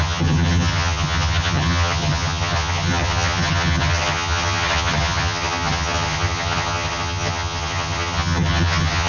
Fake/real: fake